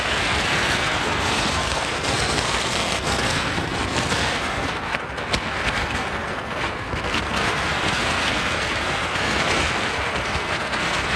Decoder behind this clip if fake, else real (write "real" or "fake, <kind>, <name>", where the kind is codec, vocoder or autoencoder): fake, codec, SNAC